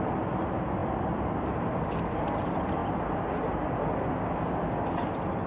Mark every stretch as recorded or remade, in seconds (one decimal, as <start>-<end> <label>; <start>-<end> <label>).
0.0-5.5 recorded